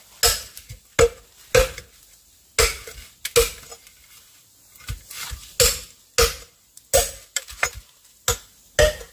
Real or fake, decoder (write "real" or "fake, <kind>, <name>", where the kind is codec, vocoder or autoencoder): real